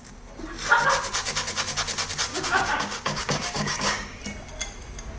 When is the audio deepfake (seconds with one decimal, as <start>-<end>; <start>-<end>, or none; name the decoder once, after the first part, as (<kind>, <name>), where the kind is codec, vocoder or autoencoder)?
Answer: 2.3-4.2 (codec, DAC)